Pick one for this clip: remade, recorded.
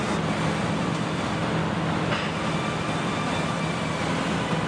recorded